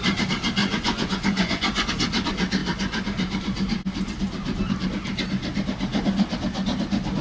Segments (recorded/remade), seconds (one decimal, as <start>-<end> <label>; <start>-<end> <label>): 0.0-0.6 recorded; 0.6-1.9 remade; 1.9-7.2 recorded